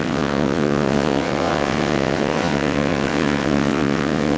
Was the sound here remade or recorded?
remade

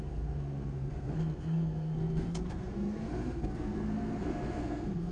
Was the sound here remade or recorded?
remade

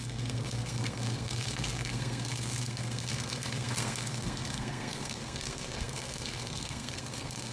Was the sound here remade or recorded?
remade